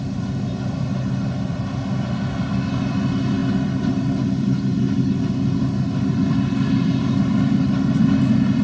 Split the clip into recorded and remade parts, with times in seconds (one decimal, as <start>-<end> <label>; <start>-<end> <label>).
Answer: 0.0-8.6 recorded